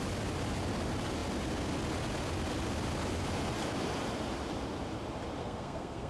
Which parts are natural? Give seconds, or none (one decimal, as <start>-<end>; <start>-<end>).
0.0-5.4